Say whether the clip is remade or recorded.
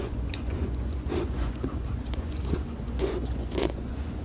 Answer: remade